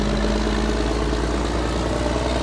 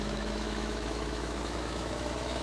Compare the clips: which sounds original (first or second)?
first